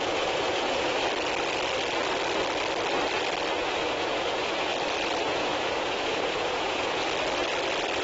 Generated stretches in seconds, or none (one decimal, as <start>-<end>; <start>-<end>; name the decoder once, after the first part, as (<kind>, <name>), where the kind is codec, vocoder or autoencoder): 0.0-1.0 (vocoder, Vocos); 3.5-4.7; 5.2-7.0